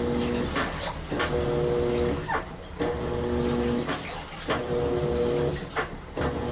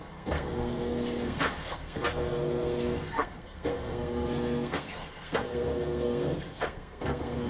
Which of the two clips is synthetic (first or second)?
second